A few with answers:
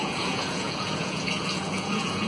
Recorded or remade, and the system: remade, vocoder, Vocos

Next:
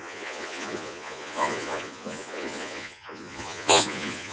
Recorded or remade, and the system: remade, vocoder, Vocos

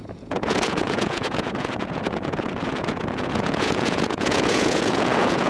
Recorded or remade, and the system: remade, vocoder, Vocos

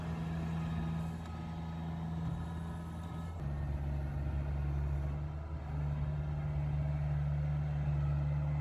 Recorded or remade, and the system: recorded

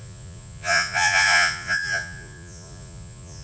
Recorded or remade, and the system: remade, vocoder, Vocos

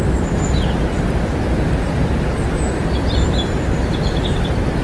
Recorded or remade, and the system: recorded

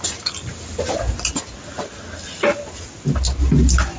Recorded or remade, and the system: recorded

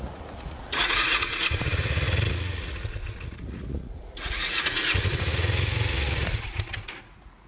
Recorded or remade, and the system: remade, vocoder, Vocos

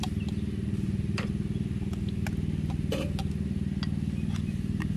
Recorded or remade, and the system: recorded